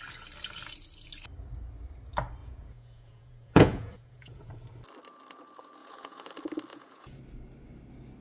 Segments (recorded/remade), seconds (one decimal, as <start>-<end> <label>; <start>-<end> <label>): 0.0-2.4 recorded; 2.4-4.5 remade; 4.5-5.8 recorded; 5.8-6.3 remade; 6.3-6.7 recorded; 6.7-7.2 remade; 7.2-8.2 recorded